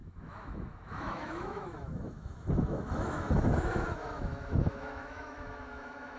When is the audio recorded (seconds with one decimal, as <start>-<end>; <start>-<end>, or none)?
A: none

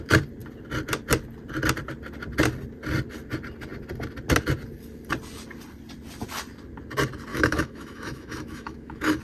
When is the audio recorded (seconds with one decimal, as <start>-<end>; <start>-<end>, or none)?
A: 0.0-7.3

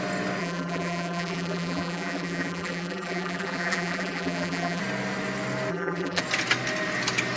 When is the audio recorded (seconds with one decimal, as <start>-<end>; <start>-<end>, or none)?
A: 0.0-0.4; 4.8-5.7; 6.2-7.4

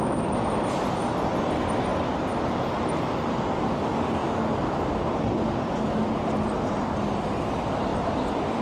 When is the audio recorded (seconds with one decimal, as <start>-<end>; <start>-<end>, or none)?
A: 0.0-7.9

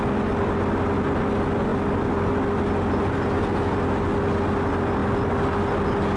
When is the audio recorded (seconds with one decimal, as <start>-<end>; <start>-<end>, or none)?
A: 0.0-6.2

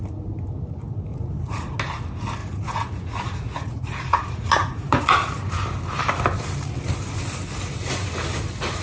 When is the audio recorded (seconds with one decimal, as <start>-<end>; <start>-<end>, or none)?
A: 0.0-1.1; 1.8-2.4; 5.5-8.8

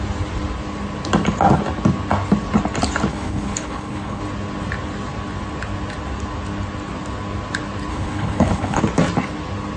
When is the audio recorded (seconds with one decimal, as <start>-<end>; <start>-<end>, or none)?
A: 0.0-3.1; 4.2-7.9; 8.8-9.8